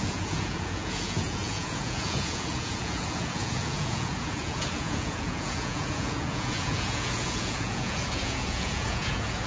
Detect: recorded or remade remade